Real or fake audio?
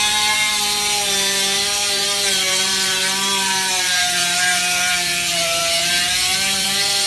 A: fake